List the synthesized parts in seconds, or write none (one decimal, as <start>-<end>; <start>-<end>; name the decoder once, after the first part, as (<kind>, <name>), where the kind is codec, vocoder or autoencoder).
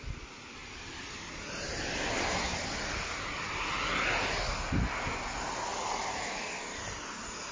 none